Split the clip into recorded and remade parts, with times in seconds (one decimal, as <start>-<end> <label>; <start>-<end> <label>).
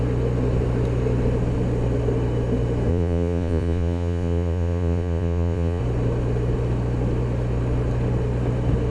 0.0-2.9 recorded; 2.9-5.8 remade; 5.8-8.9 recorded